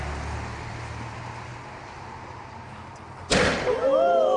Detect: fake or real real